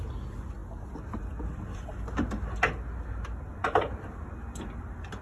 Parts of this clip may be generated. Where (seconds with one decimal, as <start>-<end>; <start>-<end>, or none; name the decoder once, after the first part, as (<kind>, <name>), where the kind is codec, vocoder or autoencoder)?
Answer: none